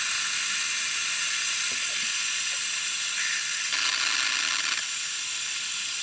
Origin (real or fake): real